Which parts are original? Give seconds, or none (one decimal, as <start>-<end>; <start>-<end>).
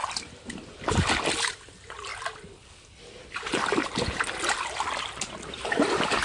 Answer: 0.0-6.2